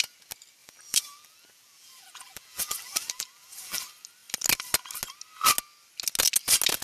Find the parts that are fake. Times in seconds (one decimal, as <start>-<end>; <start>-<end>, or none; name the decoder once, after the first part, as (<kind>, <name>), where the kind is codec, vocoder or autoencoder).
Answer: 0.6-3.8 (vocoder, BigVGAN v2)